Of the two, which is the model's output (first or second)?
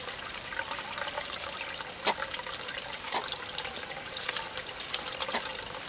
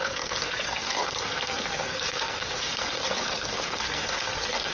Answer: second